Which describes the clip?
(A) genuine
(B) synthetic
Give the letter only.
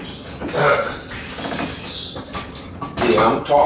A